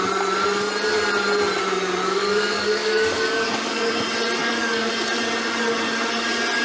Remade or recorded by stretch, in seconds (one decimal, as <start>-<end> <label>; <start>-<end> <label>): 0.0-2.0 recorded; 2.0-3.9 remade; 3.9-4.4 recorded; 4.4-4.9 remade; 4.9-6.6 recorded